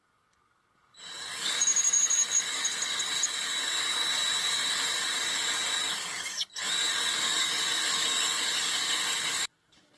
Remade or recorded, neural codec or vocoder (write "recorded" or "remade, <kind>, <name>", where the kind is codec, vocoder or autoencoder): remade, codec, DAC